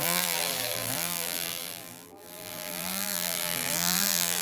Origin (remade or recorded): remade